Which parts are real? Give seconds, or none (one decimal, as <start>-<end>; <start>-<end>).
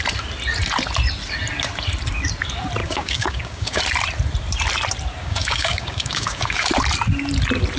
0.0-2.8; 3.8-5.2; 6.7-7.8